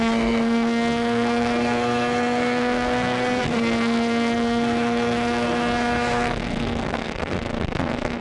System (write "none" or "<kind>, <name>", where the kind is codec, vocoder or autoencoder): codec, SNAC